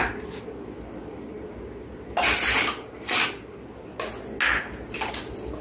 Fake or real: real